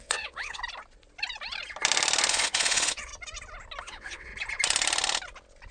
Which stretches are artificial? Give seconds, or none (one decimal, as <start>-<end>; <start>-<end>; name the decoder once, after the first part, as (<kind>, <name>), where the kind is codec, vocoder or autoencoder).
0.0-0.6 (vocoder, WaveNeXt); 2.3-3.1; 3.8-4.3